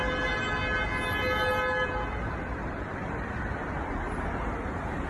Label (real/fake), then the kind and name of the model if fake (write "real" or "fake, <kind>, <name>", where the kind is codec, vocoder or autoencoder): real